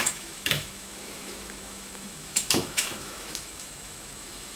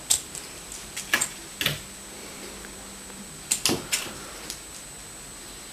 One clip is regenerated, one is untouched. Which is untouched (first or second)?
second